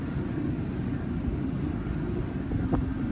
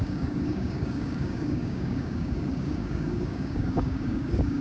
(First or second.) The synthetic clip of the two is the second